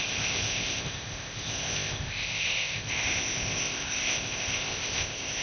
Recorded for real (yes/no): no